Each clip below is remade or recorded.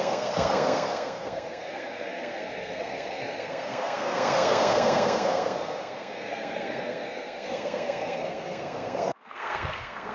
remade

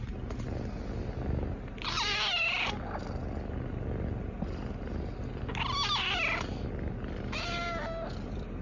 recorded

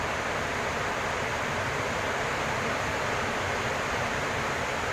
recorded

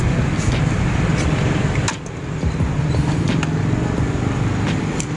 recorded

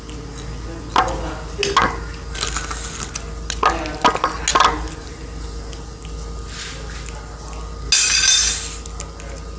recorded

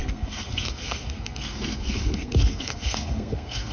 remade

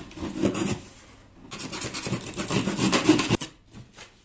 recorded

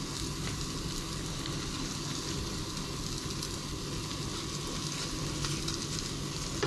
recorded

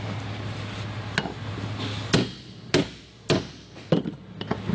recorded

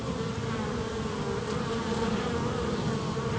recorded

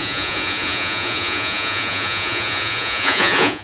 remade